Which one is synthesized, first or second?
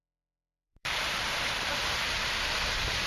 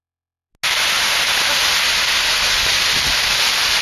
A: first